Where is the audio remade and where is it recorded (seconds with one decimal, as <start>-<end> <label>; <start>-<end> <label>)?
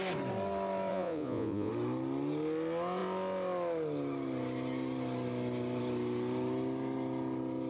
0.0-0.9 recorded; 0.9-1.7 remade; 1.7-7.7 recorded